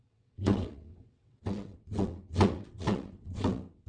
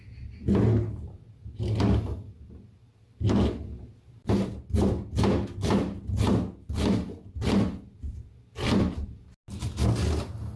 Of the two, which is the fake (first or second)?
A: first